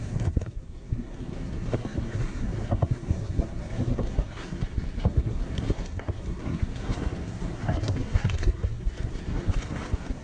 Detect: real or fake fake